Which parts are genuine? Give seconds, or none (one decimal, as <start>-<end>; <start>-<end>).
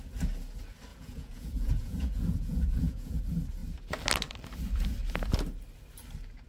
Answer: 0.0-0.9; 3.2-6.5